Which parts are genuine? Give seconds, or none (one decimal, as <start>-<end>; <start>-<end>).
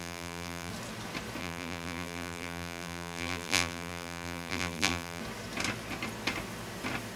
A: 0.7-1.4; 5.2-7.2